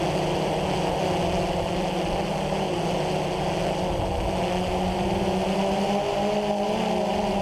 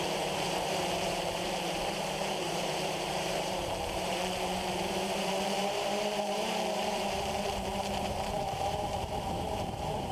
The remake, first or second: second